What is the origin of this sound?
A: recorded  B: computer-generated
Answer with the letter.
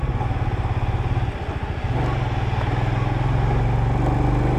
A